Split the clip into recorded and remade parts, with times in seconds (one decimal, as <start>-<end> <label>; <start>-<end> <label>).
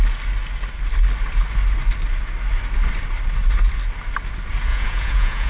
0.0-4.7 recorded; 4.7-5.5 remade